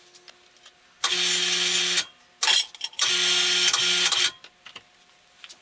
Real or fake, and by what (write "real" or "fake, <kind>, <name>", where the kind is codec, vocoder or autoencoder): real